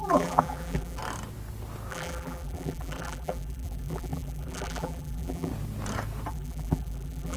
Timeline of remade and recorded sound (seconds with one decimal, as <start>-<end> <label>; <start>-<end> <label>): 0.0-1.0 remade; 1.0-1.9 recorded; 1.9-5.5 remade; 5.5-6.3 recorded; 6.3-7.4 remade